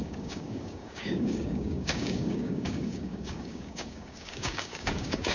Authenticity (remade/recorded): remade